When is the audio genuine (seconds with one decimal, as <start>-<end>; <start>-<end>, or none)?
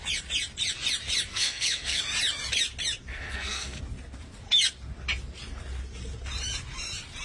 0.0-1.3; 2.0-3.1; 3.8-7.2